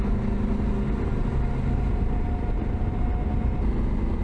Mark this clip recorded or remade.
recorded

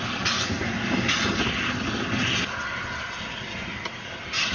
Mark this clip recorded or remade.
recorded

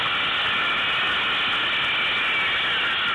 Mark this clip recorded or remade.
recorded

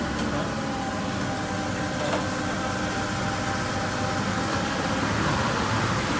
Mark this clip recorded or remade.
recorded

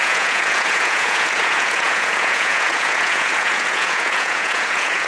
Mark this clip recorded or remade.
remade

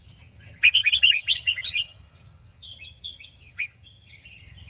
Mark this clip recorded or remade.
remade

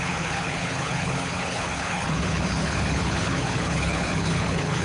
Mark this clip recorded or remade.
remade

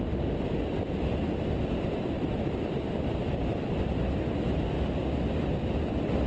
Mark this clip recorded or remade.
recorded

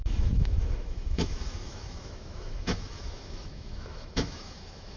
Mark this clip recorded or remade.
remade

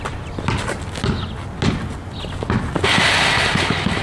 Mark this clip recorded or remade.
recorded